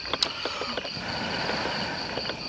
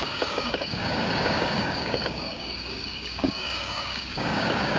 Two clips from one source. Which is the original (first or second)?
first